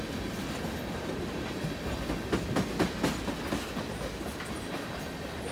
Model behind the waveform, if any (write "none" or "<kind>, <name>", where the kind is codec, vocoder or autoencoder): none